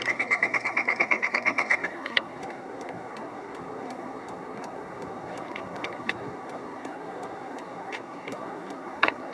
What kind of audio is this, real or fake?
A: fake